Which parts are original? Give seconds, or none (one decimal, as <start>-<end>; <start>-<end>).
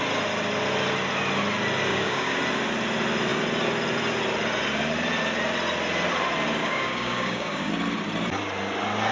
0.0-1.9; 2.4-6.6; 7.7-9.1